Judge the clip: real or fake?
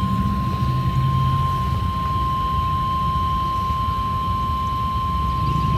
real